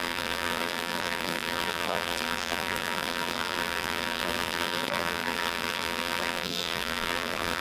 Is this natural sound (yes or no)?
no